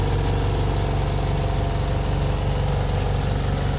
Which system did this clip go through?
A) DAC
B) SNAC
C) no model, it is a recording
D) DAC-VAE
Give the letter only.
C